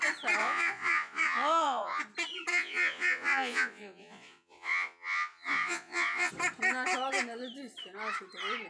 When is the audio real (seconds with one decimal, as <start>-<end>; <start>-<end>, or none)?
0.0-0.4; 2.0-2.5; 6.3-8.7